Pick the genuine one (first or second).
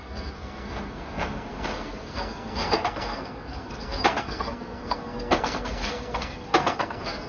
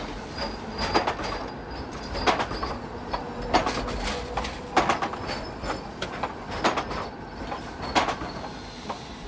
second